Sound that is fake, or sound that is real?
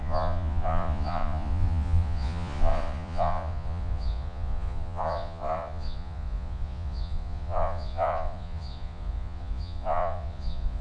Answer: fake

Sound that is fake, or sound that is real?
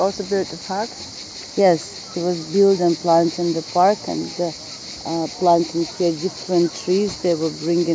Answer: real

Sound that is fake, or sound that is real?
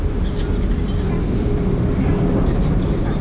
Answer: real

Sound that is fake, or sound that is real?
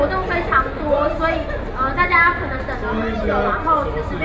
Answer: real